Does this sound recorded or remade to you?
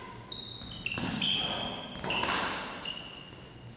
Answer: recorded